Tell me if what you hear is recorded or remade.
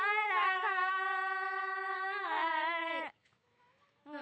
remade